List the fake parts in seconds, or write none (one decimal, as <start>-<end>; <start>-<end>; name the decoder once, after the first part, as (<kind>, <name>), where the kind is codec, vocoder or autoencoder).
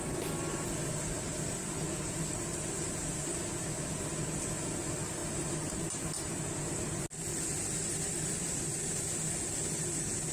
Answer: 5.2-5.7 (vocoder, BigVGAN v2)